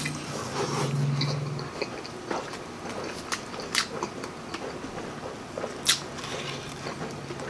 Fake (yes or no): no